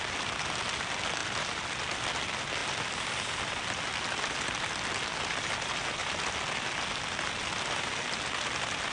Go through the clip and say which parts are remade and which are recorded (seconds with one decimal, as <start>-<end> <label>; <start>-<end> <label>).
0.0-8.9 recorded